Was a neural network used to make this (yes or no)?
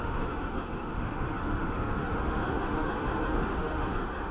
yes